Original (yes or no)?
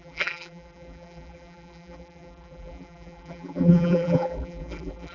no